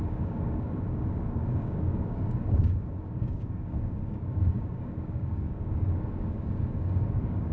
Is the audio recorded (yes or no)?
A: no